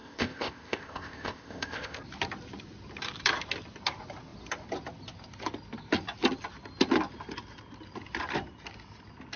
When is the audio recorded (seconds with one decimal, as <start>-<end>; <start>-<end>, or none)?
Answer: 2.0-9.4